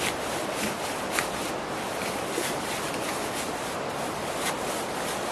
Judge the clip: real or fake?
real